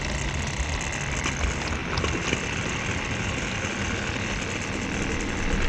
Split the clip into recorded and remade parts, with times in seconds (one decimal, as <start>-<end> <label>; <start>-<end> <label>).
0.0-5.7 recorded